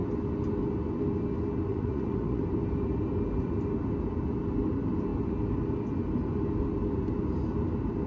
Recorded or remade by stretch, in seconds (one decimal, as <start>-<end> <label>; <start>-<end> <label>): 0.0-1.7 recorded; 1.7-2.4 remade; 2.4-8.1 recorded